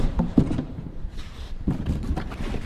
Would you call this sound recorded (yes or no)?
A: no